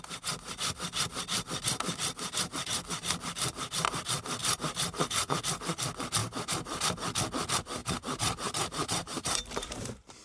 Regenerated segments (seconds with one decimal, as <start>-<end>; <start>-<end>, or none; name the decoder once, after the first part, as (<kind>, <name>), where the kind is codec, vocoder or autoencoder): 4.4-5.4 (vocoder, BigVGAN v2); 6.2-6.8; 7.8-10.2